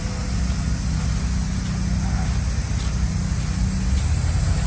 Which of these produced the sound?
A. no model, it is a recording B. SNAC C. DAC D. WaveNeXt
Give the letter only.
A